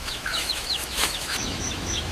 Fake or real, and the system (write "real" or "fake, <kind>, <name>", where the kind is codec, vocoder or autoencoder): fake, autoencoder, DAC-VAE